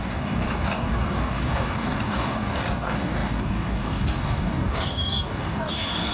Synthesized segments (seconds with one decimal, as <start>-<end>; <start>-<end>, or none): 0.0-6.1